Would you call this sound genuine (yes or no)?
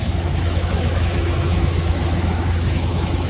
no